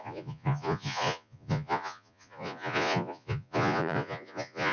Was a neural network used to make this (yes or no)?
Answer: yes